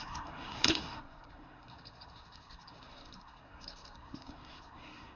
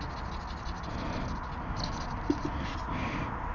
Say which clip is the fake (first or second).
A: first